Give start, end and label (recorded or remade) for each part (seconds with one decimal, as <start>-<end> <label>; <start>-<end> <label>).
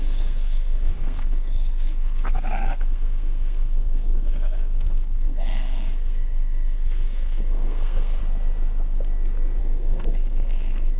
0.0-8.2 remade; 8.2-9.6 recorded; 9.6-11.0 remade